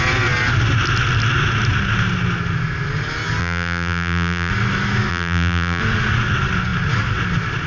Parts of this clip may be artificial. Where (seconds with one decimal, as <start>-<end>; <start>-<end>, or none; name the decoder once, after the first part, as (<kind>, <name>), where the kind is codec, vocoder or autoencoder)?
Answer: 3.4-4.5 (vocoder, BigVGAN v2); 5.1-5.8